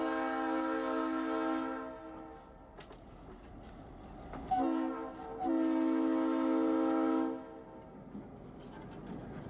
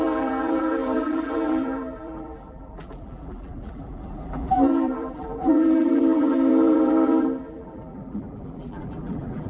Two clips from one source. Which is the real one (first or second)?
first